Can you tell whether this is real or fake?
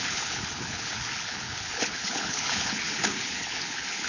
fake